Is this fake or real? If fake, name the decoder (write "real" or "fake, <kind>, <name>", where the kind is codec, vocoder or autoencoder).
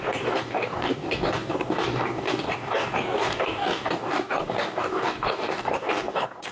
fake, codec, DAC